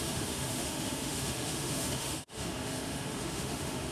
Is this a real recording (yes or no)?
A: no